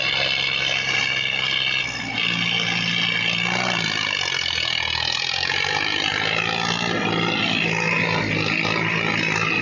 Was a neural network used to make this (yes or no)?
no